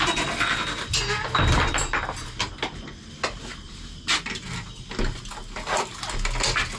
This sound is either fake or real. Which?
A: real